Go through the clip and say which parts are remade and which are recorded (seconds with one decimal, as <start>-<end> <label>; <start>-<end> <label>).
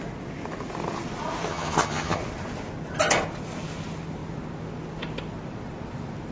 0.0-1.5 recorded; 1.5-2.2 remade; 2.2-6.3 recorded